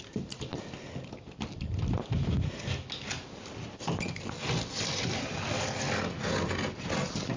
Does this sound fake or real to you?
real